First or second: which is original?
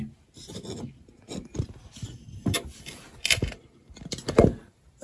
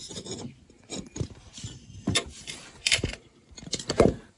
first